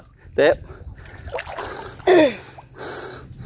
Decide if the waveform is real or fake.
real